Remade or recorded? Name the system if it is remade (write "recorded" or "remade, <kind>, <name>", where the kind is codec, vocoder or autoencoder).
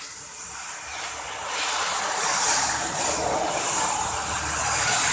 remade, vocoder, BigVGAN v2